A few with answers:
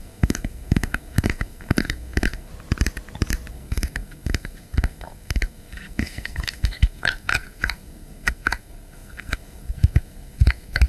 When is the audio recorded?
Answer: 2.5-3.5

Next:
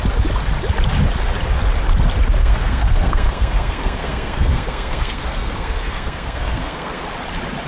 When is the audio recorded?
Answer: 0.0-2.4; 7.0-7.7